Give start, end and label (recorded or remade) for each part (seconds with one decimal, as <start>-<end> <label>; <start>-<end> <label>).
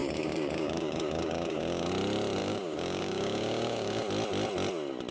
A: 0.0-1.9 remade; 1.9-2.4 recorded; 2.4-4.0 remade; 4.0-5.1 recorded